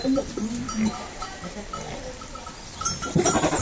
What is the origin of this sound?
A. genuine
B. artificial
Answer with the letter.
A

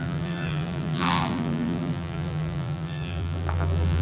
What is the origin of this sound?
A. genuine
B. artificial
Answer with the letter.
B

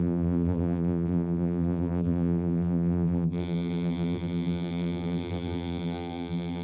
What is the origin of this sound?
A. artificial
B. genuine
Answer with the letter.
A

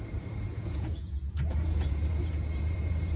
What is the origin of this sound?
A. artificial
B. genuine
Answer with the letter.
A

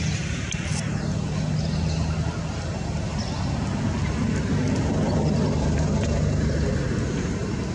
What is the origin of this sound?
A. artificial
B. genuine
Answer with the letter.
B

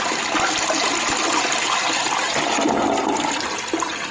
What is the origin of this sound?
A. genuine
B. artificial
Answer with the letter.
A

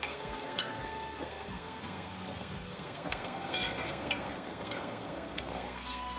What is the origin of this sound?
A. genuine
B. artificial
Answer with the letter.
B